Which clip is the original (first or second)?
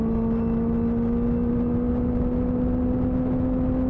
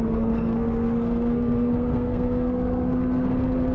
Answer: first